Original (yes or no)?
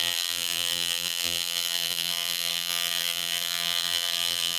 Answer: no